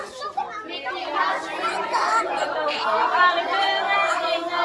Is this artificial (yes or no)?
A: yes